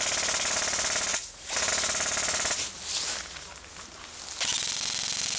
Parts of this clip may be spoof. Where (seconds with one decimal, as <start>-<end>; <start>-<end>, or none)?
1.1-1.7